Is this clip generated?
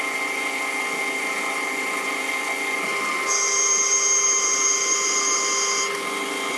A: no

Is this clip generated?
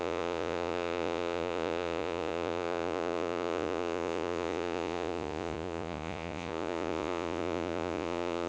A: yes